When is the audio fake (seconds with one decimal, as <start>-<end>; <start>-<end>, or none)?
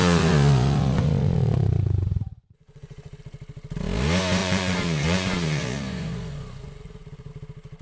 0.0-3.2; 4.4-7.3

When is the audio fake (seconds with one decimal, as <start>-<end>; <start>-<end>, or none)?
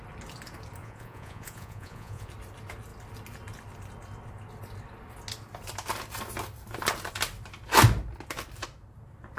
0.8-2.3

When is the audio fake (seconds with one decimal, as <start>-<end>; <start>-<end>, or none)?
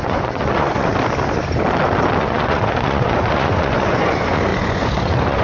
0.0-0.9; 2.2-5.4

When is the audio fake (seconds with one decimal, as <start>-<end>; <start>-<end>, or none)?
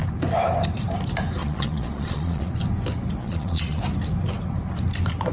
1.4-2.5; 3.2-3.8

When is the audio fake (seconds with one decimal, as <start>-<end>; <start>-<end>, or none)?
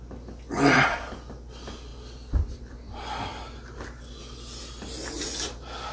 none